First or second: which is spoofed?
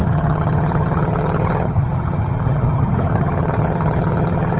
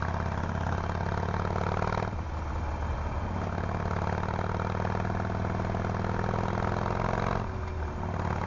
first